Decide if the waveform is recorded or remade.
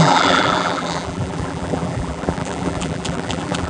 remade